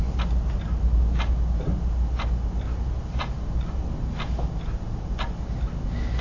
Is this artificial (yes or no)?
no